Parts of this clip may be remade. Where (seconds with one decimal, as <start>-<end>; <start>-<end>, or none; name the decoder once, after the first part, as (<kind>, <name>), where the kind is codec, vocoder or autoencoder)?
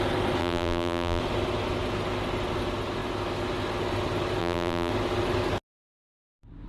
0.4-1.2 (vocoder, BigVGAN v2); 4.4-4.9